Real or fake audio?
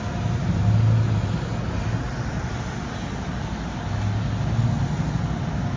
real